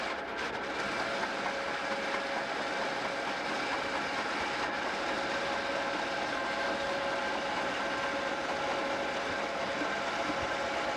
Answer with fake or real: real